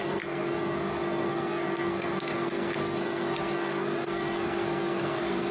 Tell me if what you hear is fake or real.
fake